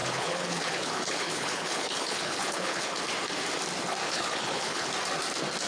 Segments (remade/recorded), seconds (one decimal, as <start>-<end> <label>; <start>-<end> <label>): 0.0-3.0 remade; 3.0-4.0 recorded; 4.0-4.9 remade; 4.9-5.7 recorded